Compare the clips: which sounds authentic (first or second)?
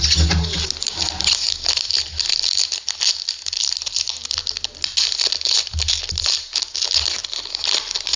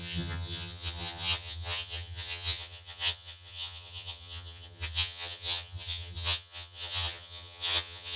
first